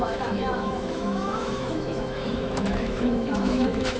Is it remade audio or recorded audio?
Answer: remade